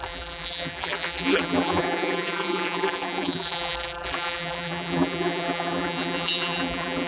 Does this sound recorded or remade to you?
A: remade